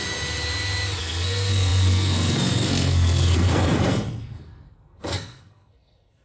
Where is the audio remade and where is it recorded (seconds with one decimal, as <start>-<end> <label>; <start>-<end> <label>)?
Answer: 0.0-1.0 recorded; 1.0-6.2 remade